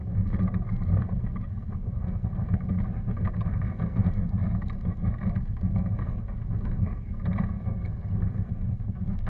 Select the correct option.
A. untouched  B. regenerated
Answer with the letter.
B